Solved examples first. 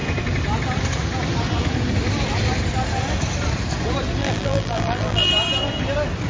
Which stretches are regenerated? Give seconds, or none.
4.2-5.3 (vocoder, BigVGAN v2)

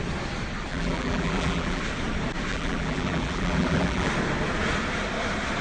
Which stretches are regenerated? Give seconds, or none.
0.7-1.8 (vocoder, BigVGAN v2); 2.5-4.1

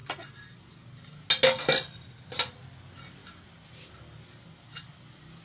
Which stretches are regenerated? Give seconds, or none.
none

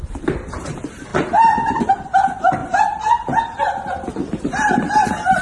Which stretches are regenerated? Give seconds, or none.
0.0-2.6 (vocoder, BigVGAN v2); 4.1-5.4

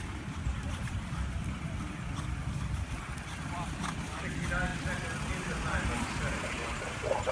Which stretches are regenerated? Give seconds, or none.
0.5-3.9 (vocoder, BigVGAN v2); 4.7-6.1

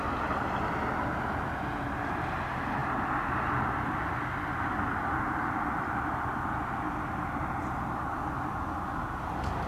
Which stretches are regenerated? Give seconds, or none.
none

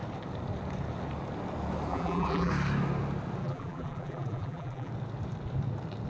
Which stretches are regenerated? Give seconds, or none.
1.9-2.5 (vocoder, BigVGAN v2); 3.4-4.9

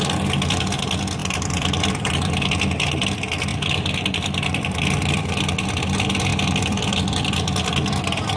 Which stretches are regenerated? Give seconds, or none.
1.2-2.5 (vocoder, BigVGAN v2); 3.5-5.8; 6.3-8.4